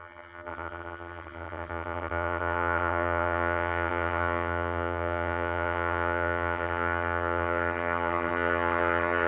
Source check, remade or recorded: remade